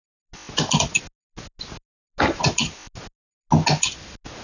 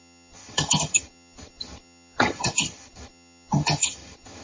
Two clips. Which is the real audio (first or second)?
first